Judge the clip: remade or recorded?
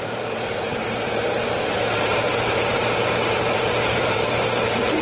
remade